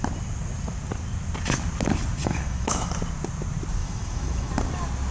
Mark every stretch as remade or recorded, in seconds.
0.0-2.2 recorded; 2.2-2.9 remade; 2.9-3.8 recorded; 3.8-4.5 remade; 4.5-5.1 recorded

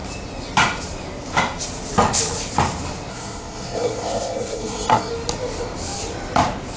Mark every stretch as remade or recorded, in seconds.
0.0-3.1 recorded; 3.1-5.1 remade; 5.1-6.8 recorded

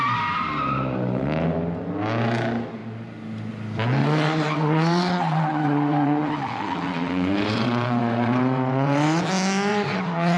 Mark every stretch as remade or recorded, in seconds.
0.0-4.0 recorded; 4.0-9.2 remade; 9.2-9.7 recorded; 9.7-10.4 remade

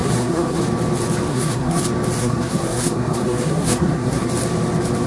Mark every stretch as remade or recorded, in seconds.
0.0-0.6 remade; 0.6-1.3 recorded; 1.3-1.8 remade; 1.8-2.2 recorded; 2.2-4.3 remade; 4.3-5.1 recorded

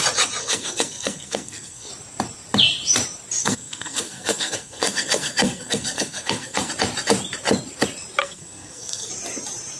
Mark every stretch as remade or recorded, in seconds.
0.0-0.4 recorded; 0.4-1.9 remade; 1.9-3.4 recorded; 3.4-6.7 remade; 6.7-8.2 recorded; 8.2-9.1 remade; 9.1-9.8 recorded